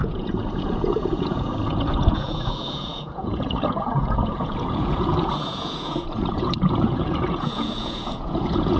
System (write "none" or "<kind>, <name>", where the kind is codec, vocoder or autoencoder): vocoder, Vocos